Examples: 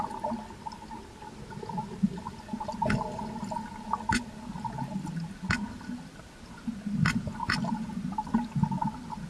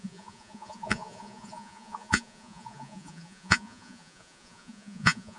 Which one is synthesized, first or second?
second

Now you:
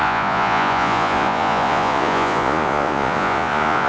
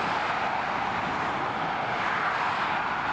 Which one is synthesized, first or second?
first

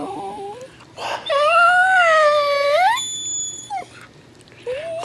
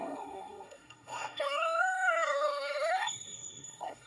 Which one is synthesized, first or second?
second